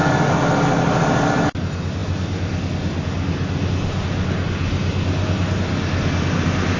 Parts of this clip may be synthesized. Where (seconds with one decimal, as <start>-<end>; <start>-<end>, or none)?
none